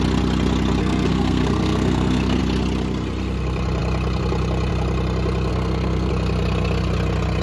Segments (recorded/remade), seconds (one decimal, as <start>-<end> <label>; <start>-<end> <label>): 0.0-0.8 recorded; 0.8-2.4 remade; 2.4-5.5 recorded; 5.5-6.1 remade; 6.1-7.4 recorded